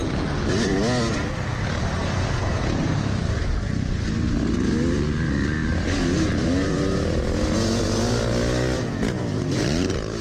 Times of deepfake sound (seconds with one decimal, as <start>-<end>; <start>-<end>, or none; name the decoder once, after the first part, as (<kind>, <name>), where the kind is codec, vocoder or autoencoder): none